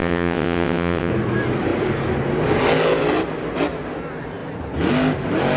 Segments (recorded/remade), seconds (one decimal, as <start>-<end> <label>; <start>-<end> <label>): 0.0-1.1 remade; 1.1-5.6 recorded